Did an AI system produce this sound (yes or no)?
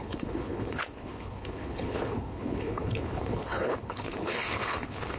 yes